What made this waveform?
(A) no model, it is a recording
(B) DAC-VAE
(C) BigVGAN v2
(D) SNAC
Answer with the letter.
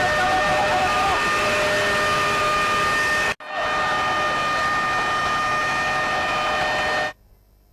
A